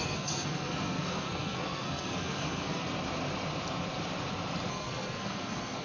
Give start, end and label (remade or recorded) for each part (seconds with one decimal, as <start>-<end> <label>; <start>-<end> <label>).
0.0-2.9 remade; 2.9-4.7 recorded; 4.7-5.8 remade